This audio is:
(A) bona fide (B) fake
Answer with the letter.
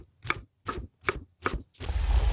A